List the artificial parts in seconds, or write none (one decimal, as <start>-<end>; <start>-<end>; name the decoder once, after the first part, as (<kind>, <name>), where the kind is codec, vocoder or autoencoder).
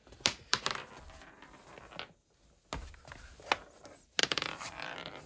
0.0-0.7 (vocoder, BigVGAN v2); 4.2-5.3